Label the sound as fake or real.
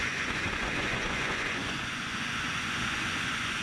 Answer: fake